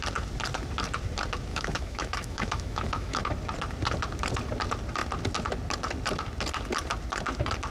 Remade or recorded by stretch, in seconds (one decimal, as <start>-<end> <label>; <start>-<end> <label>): 0.0-1.5 recorded; 1.5-3.2 remade; 3.2-7.7 recorded